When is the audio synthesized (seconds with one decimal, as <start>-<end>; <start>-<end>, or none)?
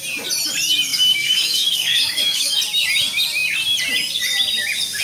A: 0.9-2.6